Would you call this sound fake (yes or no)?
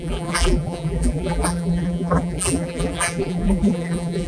yes